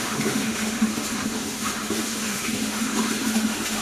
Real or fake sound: fake